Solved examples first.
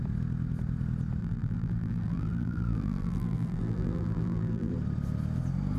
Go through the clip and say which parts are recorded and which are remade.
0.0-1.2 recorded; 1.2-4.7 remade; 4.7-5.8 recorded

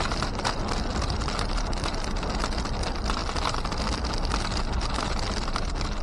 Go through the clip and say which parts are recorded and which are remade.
0.0-3.2 remade; 3.2-4.7 recorded; 4.7-6.0 remade